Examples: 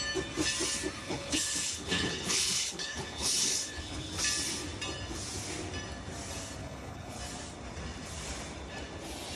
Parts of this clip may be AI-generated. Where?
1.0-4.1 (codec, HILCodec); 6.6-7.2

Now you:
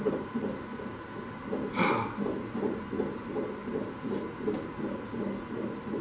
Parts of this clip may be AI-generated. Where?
none